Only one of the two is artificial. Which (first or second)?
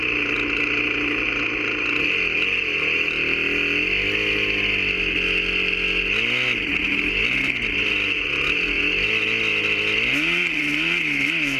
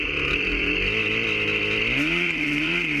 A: second